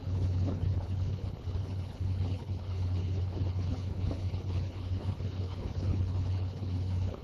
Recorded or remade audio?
remade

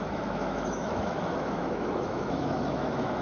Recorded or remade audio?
remade